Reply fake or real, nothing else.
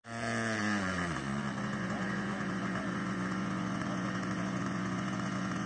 fake